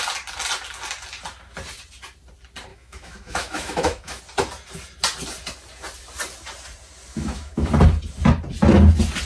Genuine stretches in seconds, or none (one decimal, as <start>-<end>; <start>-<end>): 0.0-2.7; 4.2-7.1; 7.7-9.3